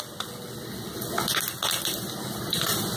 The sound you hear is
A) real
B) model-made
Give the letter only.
A